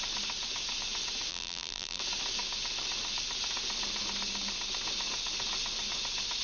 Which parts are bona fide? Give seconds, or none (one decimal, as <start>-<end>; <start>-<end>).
0.0-1.3; 2.0-6.4